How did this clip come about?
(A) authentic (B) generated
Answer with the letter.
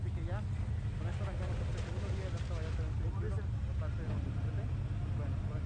A